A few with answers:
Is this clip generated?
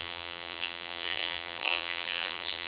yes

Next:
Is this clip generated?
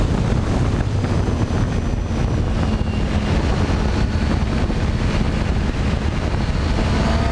no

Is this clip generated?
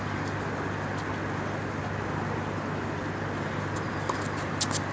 no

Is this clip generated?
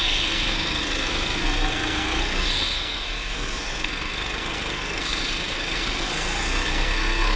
yes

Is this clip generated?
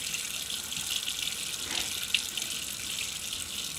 no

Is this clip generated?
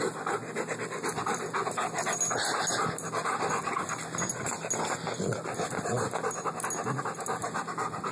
no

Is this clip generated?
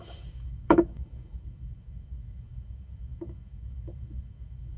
yes